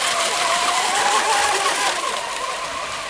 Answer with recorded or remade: recorded